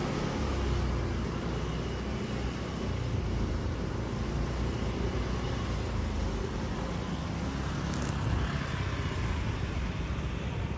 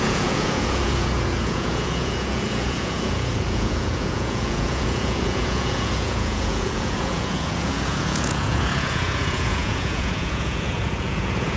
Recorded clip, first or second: first